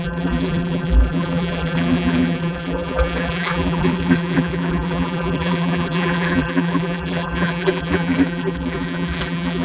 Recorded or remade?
remade